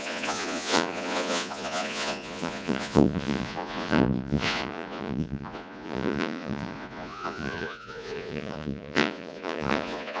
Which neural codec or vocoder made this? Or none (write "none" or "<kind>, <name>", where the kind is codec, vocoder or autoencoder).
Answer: vocoder, Vocos